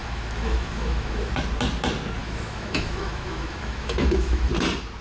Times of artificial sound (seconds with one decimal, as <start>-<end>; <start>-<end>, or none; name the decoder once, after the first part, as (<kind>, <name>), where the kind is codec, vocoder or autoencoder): 0.0-1.3 (autoencoder, DAC-VAE); 2.2-4.5